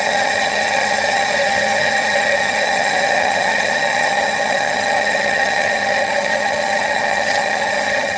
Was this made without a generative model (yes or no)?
no